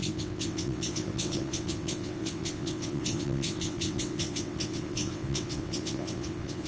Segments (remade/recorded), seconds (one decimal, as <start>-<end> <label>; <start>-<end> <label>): 0.0-6.7 remade